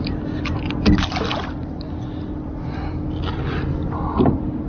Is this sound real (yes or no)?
yes